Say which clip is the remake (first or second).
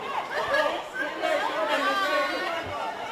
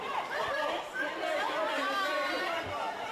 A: second